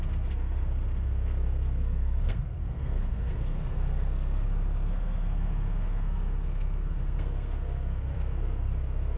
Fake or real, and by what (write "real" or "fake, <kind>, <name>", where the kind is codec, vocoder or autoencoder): fake, codec, SNAC